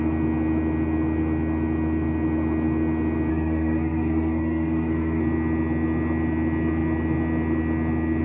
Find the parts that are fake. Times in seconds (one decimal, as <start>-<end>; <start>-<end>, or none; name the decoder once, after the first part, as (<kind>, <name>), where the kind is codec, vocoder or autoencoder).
3.3-5.2 (codec, SNAC)